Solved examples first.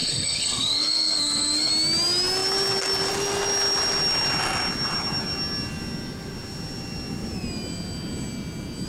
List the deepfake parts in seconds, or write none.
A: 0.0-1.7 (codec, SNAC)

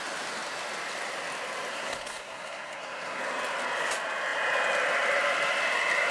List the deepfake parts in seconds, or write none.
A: 1.7-3.2 (codec, SNAC)

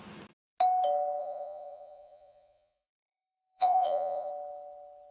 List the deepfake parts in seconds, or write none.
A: 1.2-4.3 (vocoder, Vocos)

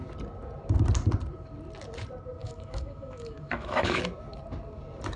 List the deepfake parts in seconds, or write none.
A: 2.4-4.0 (autoencoder, DAC-VAE)

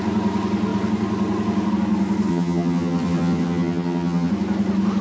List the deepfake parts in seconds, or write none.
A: 2.3-4.3 (vocoder, HiFi-GAN)

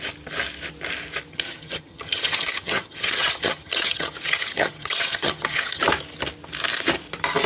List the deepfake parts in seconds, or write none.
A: 1.3-5.8 (vocoder, HiFi-GAN)

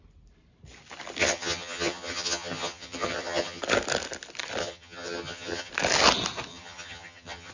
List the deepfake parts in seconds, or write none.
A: 1.2-3.6 (vocoder, HiFi-GAN); 4.6-5.7; 6.5-7.5